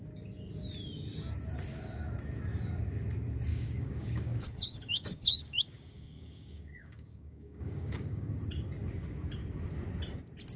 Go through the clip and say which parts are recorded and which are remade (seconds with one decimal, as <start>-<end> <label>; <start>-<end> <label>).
0.0-3.5 recorded; 3.5-8.3 remade; 8.3-10.6 recorded